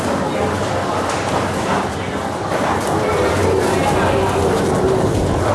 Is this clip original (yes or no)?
yes